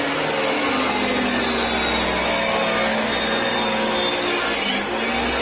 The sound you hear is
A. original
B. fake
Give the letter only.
A